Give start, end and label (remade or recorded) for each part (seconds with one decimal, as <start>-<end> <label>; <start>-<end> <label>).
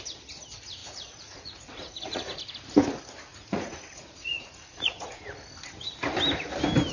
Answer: 0.0-0.8 recorded; 0.8-2.4 remade; 2.4-3.3 recorded; 3.3-5.2 remade; 5.2-6.9 recorded